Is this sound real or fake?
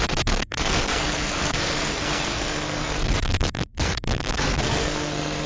fake